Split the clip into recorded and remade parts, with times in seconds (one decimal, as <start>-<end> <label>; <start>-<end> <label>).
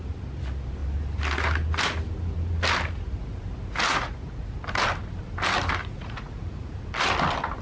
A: 0.0-3.9 recorded; 3.9-4.6 remade; 4.6-5.8 recorded; 5.8-6.8 remade; 6.8-7.6 recorded